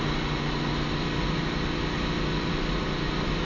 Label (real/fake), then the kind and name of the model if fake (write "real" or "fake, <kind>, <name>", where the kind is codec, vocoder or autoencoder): real